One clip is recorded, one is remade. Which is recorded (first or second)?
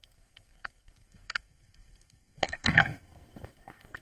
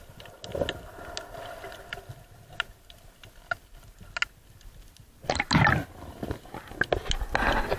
second